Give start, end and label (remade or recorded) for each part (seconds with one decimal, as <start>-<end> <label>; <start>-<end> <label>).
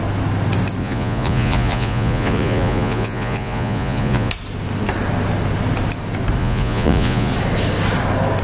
0.0-0.8 recorded; 0.8-4.3 remade; 4.3-6.4 recorded; 6.4-7.3 remade; 7.3-8.4 recorded